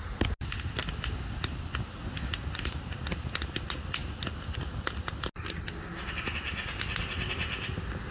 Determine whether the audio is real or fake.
real